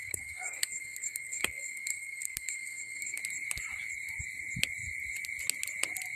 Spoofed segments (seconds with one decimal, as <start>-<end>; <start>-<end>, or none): 0.0-3.2